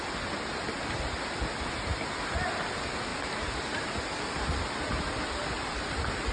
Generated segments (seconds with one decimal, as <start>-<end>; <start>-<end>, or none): none